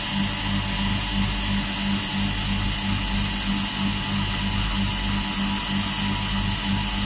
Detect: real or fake real